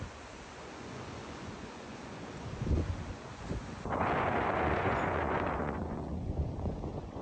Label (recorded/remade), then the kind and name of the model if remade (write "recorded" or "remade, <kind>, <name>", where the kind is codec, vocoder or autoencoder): remade, vocoder, Vocos